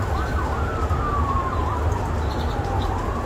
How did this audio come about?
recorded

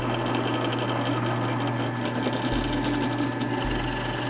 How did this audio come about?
recorded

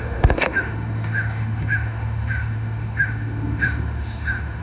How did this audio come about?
remade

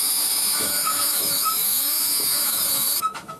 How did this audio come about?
remade